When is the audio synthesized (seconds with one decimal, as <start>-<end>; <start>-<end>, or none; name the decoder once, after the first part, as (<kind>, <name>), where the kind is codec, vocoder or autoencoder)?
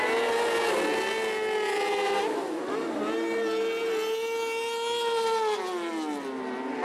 none